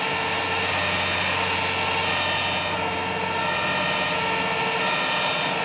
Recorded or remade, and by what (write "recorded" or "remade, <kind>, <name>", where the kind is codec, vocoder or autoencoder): recorded